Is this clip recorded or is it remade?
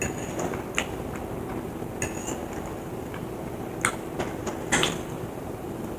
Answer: recorded